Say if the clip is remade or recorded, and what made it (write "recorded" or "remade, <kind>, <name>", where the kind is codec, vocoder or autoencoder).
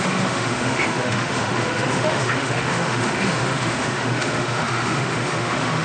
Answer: remade, autoencoder, DAC-VAE